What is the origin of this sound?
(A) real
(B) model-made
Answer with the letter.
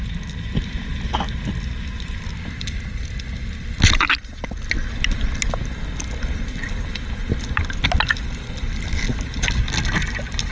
A